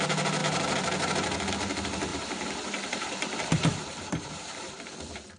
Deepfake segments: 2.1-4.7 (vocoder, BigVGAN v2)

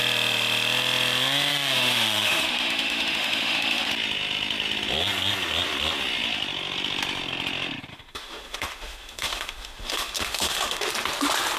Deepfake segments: 1.5-3.9 (autoencoder, DAC-VAE); 7.9-10.9

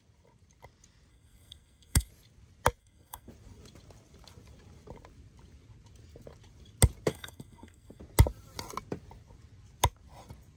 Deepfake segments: 1.1-2.1 (codec, SNAC); 2.8-3.3; 7.1-8.0

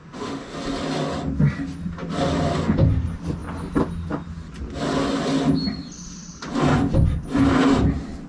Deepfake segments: 0.0-0.5 (autoencoder, DAC-VAE)

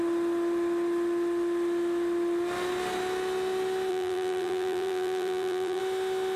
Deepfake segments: 3.9-5.8 (vocoder, BigVGAN v2)